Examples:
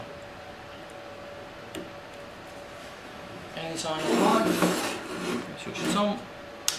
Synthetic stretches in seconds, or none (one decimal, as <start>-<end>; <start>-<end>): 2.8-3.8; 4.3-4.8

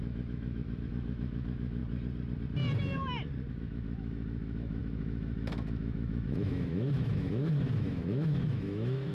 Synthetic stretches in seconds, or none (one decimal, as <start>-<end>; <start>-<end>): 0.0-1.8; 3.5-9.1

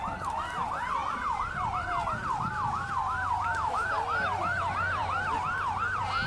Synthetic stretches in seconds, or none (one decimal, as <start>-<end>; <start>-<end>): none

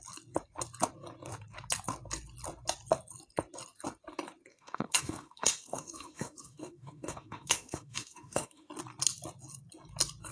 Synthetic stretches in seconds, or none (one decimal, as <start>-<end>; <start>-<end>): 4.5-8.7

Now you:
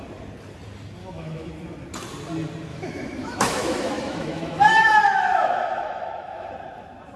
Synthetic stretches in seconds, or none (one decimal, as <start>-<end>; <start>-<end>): 1.0-1.5; 2.7-6.5